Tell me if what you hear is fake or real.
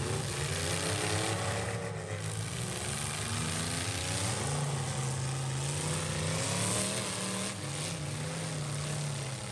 real